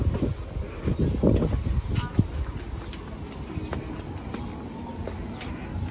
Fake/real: real